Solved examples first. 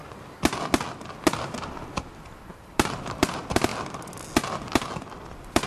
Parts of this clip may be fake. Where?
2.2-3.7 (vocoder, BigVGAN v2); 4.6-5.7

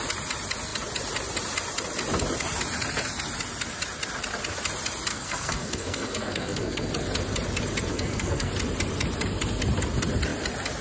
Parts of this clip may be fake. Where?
5.1-6.9 (codec, SNAC); 7.9-8.5

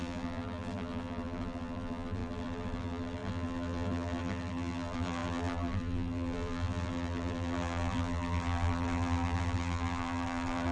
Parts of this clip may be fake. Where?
0.0-10.7 (vocoder, BigVGAN v2)

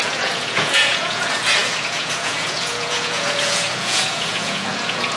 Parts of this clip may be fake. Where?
0.0-5.2 (vocoder, Vocos)

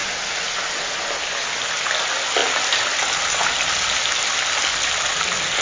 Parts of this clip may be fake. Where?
none

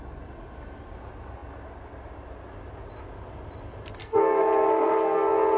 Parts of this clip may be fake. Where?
4.0-5.6 (codec, SNAC)

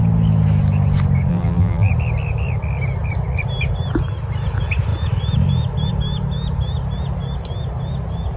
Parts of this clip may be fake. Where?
1.3-1.9 (vocoder, BigVGAN v2)

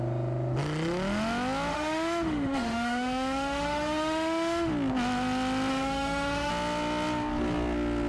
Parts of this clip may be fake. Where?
1.7-4.7 (autoencoder, DAC-VAE); 5.7-6.5